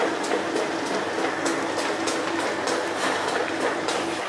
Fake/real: real